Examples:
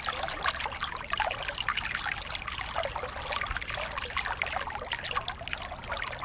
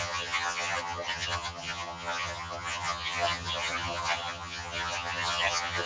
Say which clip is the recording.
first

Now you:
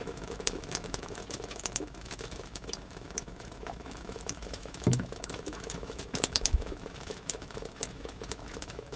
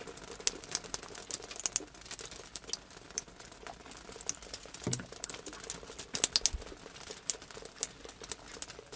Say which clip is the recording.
second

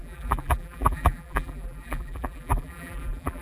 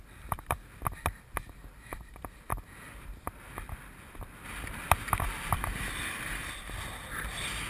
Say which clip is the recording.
second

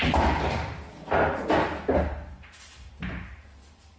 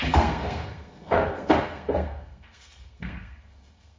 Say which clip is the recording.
first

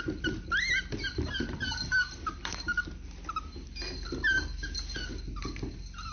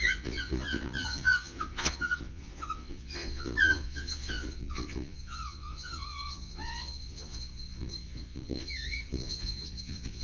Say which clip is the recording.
first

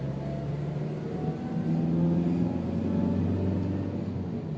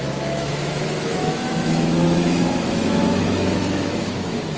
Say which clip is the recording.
first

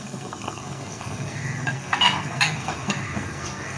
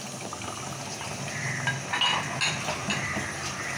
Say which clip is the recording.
second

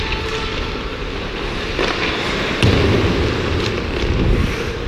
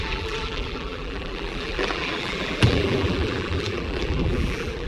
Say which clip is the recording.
first